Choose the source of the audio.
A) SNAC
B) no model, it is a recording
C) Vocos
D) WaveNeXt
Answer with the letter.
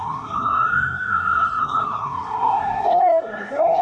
A